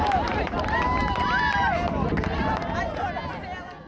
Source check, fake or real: real